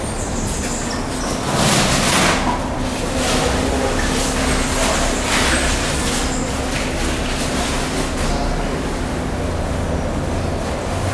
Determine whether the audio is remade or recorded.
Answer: recorded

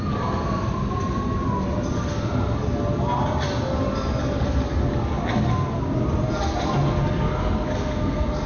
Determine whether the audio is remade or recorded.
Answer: recorded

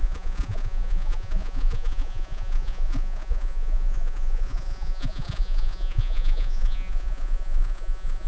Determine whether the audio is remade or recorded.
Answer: remade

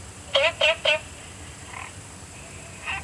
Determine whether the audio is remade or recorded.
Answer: recorded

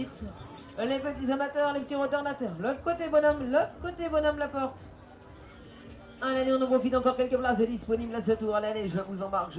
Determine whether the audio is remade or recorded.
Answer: recorded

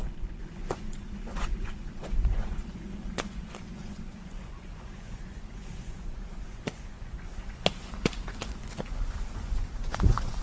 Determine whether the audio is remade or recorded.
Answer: remade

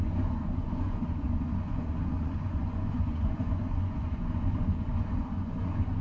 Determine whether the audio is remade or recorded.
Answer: remade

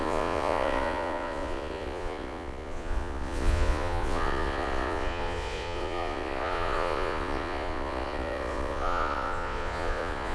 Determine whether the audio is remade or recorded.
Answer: remade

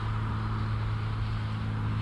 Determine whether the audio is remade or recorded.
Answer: recorded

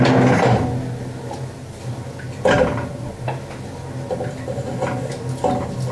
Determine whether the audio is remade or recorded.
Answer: recorded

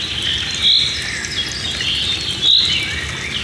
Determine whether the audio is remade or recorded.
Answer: recorded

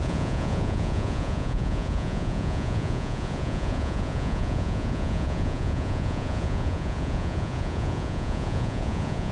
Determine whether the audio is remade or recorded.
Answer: remade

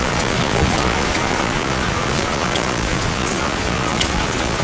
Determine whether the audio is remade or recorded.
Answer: remade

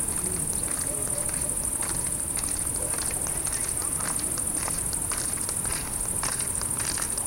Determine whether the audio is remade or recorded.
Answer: recorded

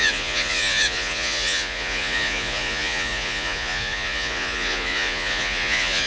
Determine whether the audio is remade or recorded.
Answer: remade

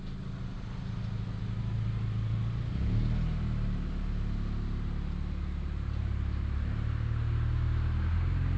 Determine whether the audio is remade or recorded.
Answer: recorded